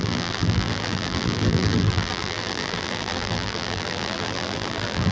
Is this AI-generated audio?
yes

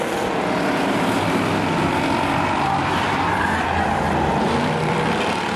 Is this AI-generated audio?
yes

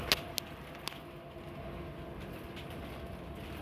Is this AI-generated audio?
no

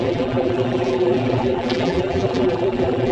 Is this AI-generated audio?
yes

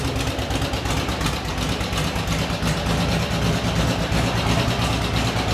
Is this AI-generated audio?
no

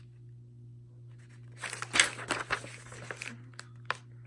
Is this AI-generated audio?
no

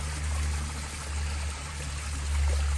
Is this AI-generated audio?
no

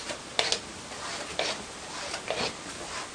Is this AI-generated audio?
no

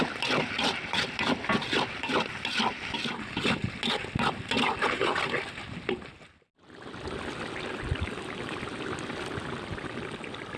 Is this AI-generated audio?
no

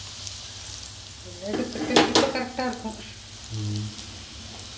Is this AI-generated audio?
no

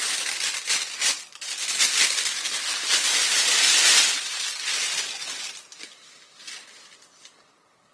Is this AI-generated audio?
no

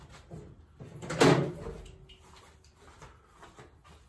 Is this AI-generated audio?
no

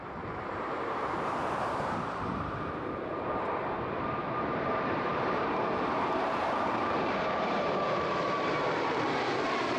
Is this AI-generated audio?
yes